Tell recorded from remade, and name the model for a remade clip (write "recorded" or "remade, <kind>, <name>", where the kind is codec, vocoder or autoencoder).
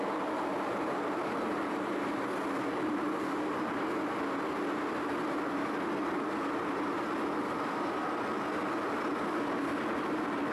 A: recorded